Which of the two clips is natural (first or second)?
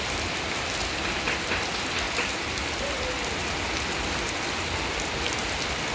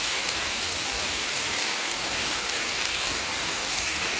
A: first